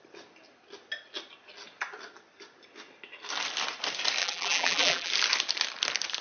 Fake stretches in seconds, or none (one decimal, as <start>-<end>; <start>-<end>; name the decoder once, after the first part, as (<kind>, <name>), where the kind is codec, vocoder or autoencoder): 4.2-5.1 (vocoder, BigVGAN v2)